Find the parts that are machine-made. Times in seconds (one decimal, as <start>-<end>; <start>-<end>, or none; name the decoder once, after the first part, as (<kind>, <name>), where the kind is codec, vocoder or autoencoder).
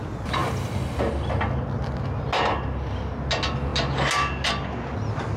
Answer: none